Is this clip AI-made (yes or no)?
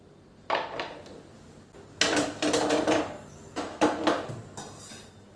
no